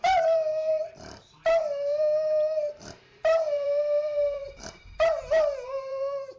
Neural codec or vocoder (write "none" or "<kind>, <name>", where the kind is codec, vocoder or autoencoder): vocoder, BigVGAN v2